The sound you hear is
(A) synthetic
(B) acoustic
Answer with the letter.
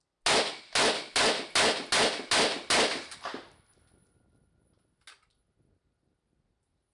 B